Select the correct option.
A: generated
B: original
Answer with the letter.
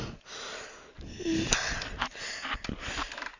B